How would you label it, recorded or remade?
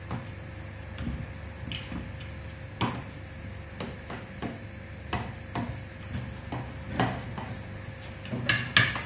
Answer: recorded